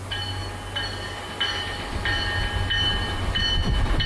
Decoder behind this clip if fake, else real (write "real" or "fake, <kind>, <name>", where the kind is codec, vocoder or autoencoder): real